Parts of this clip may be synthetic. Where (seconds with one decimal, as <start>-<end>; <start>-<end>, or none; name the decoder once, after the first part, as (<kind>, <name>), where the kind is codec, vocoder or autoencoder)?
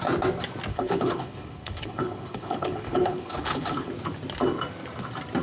0.7-3.9 (codec, HILCodec)